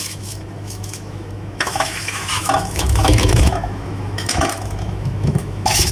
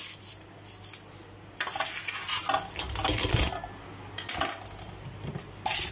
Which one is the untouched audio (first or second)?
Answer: second